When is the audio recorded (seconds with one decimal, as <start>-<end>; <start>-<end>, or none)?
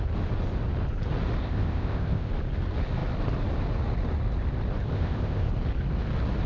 0.0-1.4; 2.3-4.9; 5.5-6.5